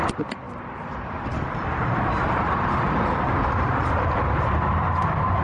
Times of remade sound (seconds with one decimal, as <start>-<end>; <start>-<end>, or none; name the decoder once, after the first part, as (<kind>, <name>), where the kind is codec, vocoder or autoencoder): 1.3-4.5 (vocoder, BigVGAN v2)